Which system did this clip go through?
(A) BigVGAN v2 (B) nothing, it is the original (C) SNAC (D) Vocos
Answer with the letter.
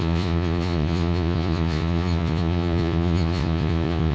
D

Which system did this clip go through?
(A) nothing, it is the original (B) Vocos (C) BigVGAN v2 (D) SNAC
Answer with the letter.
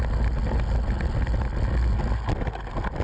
A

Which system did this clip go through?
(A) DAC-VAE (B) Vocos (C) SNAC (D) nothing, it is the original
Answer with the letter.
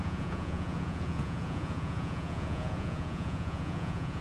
B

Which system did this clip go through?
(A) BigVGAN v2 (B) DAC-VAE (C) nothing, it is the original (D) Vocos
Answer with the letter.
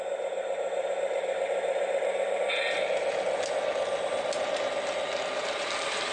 C